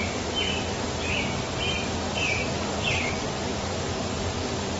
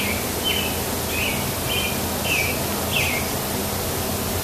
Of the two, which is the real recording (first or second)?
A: second